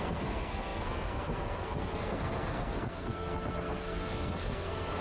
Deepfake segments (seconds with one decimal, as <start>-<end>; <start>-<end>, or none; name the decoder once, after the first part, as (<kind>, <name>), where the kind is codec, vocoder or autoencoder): 0.0-5.0 (codec, SNAC)